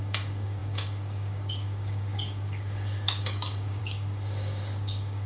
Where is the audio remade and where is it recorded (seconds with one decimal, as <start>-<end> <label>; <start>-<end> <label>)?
0.0-5.3 remade